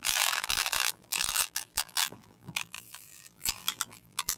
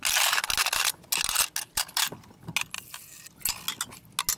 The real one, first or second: second